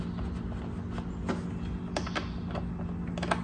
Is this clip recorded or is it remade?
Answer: recorded